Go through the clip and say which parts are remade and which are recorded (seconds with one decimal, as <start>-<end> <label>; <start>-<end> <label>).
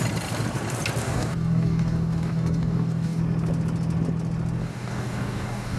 0.0-1.0 recorded; 1.0-3.2 remade; 3.2-4.6 recorded; 4.6-5.8 remade